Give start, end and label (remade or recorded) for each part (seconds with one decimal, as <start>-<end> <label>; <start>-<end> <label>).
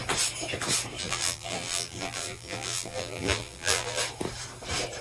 0.0-1.0 recorded; 1.0-4.0 remade; 4.0-5.0 recorded